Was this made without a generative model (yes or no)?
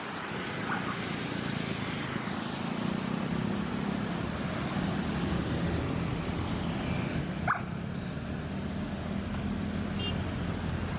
yes